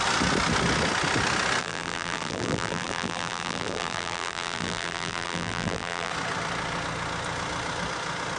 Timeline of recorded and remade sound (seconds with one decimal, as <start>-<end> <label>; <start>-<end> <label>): 0.0-1.6 recorded; 1.6-6.1 remade; 6.1-8.4 recorded